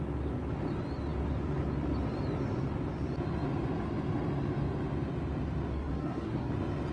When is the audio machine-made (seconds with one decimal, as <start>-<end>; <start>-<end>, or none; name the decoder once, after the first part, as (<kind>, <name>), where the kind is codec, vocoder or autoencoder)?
5.7-6.5 (codec, SNAC)

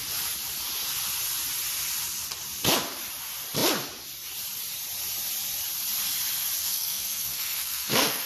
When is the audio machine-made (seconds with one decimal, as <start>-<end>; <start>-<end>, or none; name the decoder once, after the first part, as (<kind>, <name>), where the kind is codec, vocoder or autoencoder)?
6.6-8.3 (codec, SNAC)